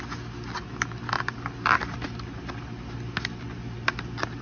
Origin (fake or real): real